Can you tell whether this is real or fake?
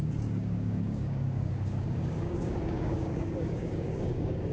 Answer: fake